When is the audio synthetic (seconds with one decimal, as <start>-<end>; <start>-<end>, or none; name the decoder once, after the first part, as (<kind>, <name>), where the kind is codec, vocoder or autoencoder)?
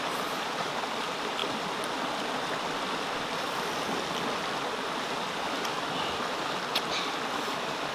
none